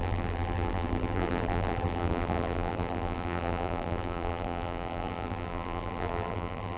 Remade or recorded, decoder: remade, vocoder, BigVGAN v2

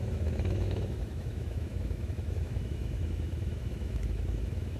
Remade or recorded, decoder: remade, autoencoder, DAC-VAE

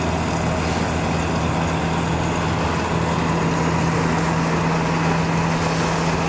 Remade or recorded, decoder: recorded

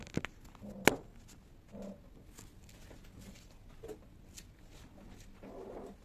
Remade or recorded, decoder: recorded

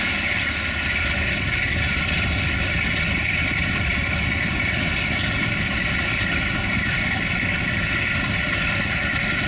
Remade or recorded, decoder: recorded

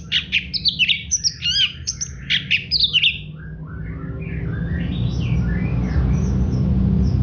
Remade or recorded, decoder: recorded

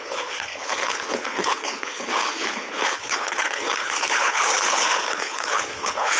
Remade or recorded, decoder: remade, codec, HILCodec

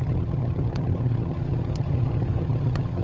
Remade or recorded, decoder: remade, vocoder, HiFi-GAN